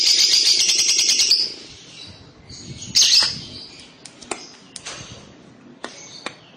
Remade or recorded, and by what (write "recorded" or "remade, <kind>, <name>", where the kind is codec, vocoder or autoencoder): recorded